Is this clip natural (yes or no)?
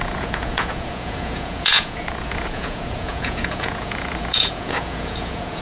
no